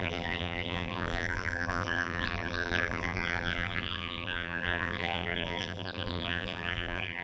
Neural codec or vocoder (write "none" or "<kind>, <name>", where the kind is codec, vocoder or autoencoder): vocoder, BigVGAN v2